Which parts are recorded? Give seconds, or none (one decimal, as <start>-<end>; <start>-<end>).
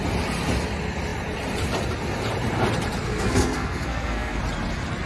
0.0-3.1; 4.4-5.1